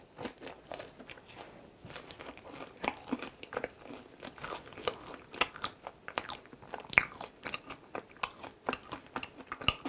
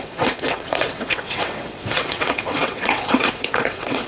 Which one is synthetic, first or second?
second